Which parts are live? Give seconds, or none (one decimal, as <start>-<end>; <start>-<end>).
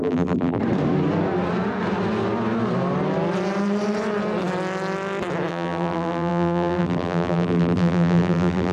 0.6-5.5